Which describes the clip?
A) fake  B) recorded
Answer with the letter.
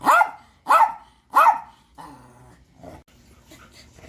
B